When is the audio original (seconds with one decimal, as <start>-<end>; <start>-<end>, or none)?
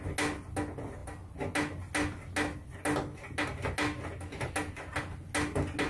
0.0-5.9